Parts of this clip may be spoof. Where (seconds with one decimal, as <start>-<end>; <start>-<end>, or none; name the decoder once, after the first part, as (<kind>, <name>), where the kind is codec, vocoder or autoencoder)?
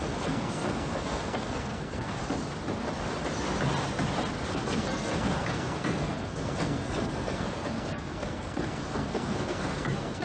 0.0-2.2 (codec, SNAC); 4.5-10.2